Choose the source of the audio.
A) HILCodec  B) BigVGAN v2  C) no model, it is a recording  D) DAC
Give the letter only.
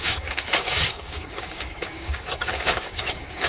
D